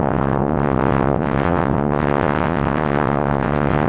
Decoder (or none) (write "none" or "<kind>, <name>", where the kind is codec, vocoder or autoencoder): vocoder, WaveNeXt